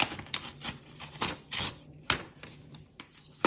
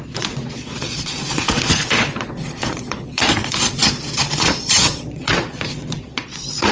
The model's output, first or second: second